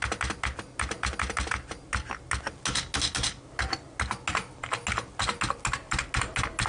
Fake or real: real